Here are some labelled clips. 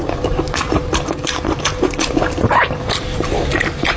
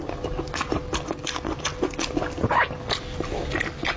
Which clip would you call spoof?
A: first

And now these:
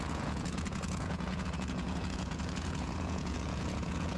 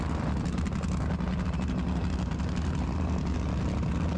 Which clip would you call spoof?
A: first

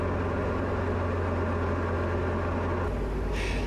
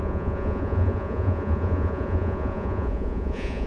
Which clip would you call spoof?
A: second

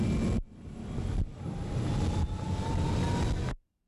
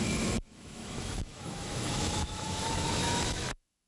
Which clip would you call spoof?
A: second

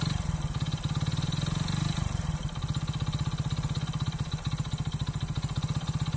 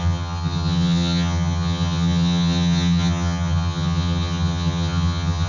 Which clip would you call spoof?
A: second